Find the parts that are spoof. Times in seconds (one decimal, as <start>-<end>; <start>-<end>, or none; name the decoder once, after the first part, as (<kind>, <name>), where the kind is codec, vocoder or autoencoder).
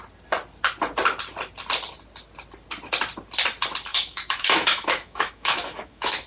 3.9-6.3 (autoencoder, DAC-VAE)